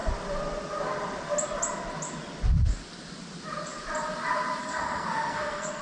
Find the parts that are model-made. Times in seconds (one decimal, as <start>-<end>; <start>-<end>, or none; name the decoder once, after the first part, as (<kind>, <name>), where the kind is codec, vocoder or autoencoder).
4.6-5.8 (codec, SNAC)